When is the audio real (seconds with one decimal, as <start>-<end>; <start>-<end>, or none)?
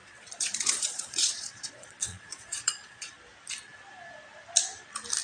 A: 3.1-5.2